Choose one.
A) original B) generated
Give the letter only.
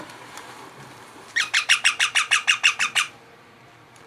B